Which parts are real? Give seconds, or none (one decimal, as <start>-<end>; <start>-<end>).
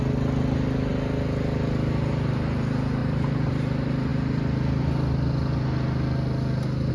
0.0-3.0; 3.5-6.9